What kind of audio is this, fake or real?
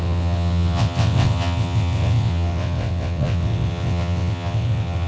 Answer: fake